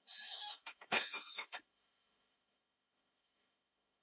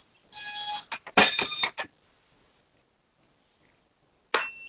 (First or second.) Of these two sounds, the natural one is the second